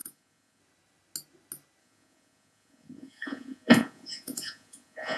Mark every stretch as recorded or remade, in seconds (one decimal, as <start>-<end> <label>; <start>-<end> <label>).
0.0-0.6 remade; 0.6-1.8 recorded; 1.8-5.2 remade